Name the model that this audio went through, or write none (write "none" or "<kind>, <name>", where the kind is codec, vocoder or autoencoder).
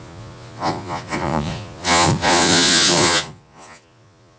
vocoder, Vocos